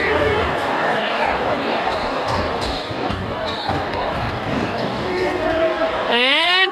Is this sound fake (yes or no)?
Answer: yes